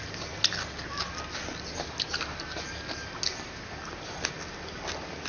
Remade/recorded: recorded